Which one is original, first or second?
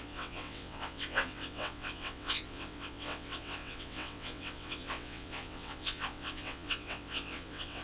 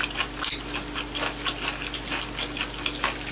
second